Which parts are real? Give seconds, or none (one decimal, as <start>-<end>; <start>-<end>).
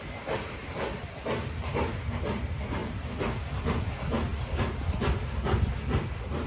0.0-0.6; 2.2-2.8; 3.7-6.5